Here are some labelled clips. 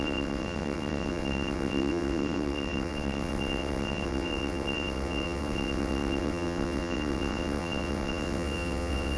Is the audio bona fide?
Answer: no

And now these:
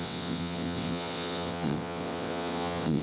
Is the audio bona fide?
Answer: no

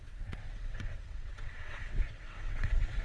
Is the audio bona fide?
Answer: no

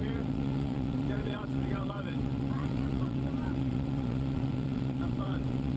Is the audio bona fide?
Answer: no